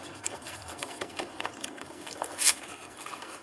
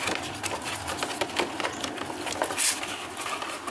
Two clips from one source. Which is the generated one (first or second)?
first